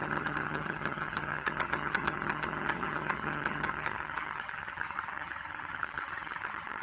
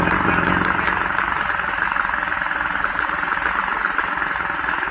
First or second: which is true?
second